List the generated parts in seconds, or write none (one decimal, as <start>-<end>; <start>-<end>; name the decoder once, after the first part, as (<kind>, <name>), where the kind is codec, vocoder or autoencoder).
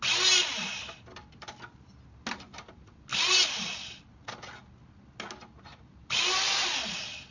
none